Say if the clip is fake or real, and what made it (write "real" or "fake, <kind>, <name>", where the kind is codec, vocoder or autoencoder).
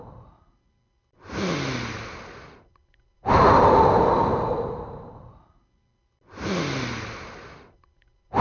real